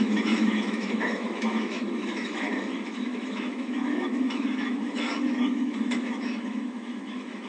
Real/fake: fake